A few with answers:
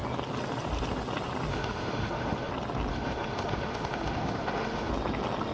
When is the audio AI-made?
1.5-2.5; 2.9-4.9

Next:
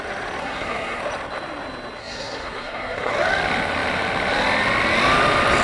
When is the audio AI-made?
0.4-1.0; 2.0-3.1

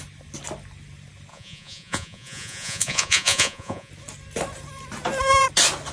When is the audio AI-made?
1.3-3.9

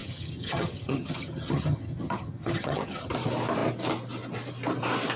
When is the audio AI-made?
0.0-3.1

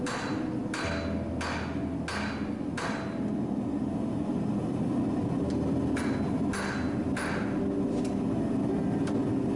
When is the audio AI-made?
none